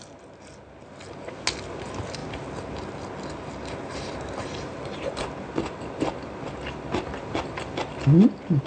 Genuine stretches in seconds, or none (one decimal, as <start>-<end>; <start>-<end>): 0.0-8.7